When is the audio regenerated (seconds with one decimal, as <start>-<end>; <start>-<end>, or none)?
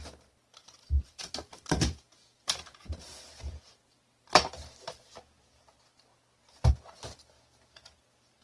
0.6-4.9